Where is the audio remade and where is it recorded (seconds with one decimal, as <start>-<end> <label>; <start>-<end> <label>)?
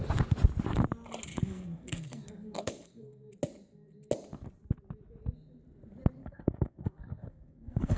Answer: 0.0-1.3 recorded; 1.3-3.3 remade; 3.3-6.2 recorded; 6.2-8.0 remade